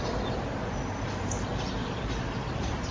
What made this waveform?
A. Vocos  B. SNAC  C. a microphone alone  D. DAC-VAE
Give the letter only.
C